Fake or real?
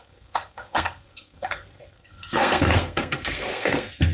fake